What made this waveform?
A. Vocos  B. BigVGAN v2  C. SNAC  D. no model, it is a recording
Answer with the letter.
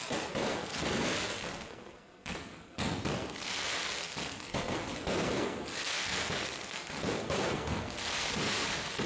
C